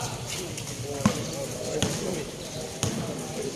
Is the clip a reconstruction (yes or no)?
no